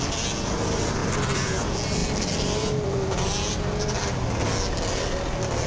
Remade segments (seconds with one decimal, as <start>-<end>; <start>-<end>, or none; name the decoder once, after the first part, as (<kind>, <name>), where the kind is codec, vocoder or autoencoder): 1.0-1.6 (vocoder, BigVGAN v2)